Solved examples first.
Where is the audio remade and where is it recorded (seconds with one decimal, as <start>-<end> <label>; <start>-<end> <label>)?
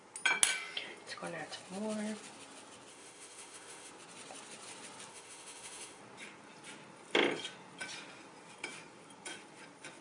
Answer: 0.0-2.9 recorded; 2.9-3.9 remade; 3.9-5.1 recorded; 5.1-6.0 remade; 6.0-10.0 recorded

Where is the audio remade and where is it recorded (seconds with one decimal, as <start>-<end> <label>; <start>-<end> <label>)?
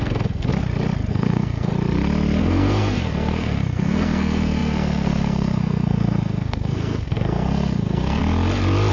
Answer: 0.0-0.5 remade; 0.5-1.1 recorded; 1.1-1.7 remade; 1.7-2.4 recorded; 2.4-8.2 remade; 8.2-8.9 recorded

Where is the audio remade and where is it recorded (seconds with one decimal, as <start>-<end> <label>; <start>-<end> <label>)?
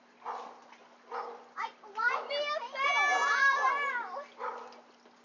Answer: 0.0-5.2 recorded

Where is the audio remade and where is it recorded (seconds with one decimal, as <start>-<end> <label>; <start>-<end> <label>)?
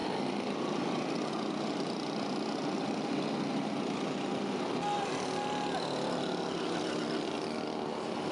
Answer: 0.0-8.3 recorded